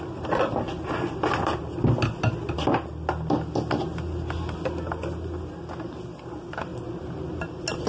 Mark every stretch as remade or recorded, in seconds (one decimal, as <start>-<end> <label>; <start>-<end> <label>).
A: 0.0-7.9 recorded